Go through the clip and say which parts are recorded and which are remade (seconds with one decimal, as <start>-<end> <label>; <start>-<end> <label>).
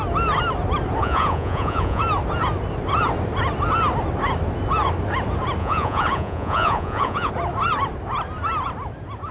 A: 0.0-1.0 recorded; 1.0-2.0 remade; 2.0-5.6 recorded; 5.6-7.3 remade; 7.3-9.3 recorded